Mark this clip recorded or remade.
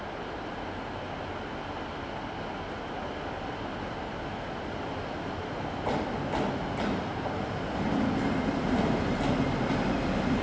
recorded